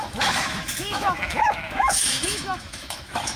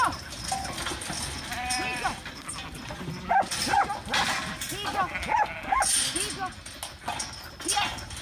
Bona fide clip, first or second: second